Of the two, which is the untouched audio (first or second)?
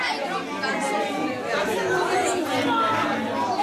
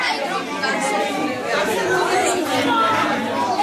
first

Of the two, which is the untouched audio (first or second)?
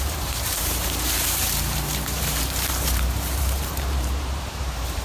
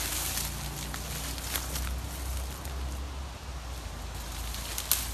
second